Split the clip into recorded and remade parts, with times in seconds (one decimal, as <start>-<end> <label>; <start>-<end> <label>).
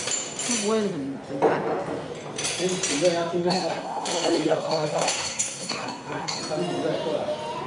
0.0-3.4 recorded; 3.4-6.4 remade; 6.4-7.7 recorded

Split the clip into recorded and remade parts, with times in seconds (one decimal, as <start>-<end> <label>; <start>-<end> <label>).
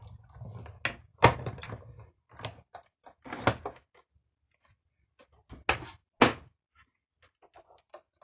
0.0-8.2 recorded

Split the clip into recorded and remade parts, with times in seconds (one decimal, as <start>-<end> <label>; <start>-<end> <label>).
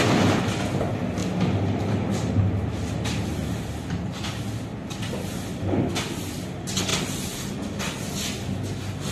0.0-9.1 recorded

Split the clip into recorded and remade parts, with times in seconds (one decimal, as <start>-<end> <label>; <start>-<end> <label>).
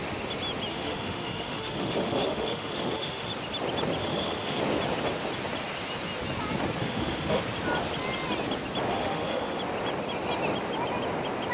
0.0-0.7 recorded; 0.7-3.3 remade; 3.3-4.0 recorded; 4.0-4.6 remade; 4.6-6.8 recorded; 6.8-7.4 remade; 7.4-8.9 recorded; 8.9-9.6 remade; 9.6-11.5 recorded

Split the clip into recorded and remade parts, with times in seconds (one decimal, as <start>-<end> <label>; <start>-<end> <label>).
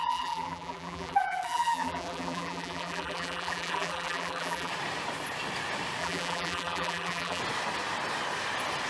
0.0-4.7 remade; 4.7-6.0 recorded; 6.0-7.4 remade; 7.4-8.9 recorded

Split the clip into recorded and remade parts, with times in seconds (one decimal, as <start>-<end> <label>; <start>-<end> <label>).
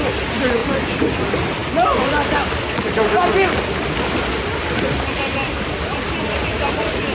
0.0-7.1 recorded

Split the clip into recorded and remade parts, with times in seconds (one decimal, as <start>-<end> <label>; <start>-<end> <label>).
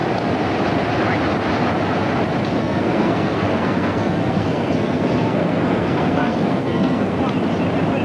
0.0-2.6 recorded; 2.6-7.2 remade; 7.2-8.0 recorded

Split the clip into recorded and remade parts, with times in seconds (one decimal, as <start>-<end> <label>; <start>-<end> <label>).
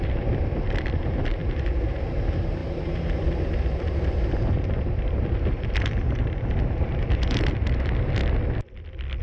0.0-8.2 remade; 8.2-9.2 recorded